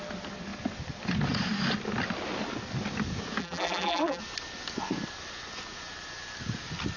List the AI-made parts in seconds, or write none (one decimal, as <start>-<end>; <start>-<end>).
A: 3.4-4.2